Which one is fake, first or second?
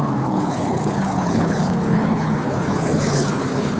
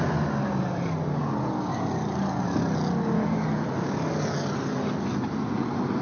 first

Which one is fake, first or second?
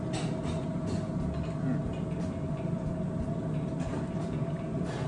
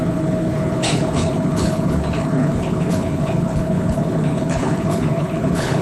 second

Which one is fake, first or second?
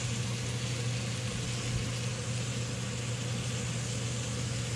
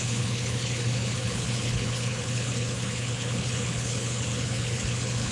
second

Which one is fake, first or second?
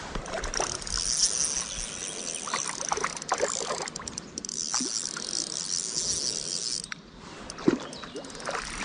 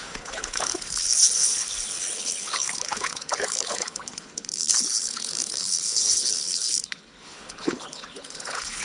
second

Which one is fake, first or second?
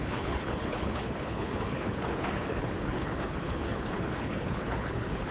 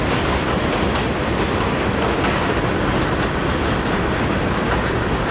first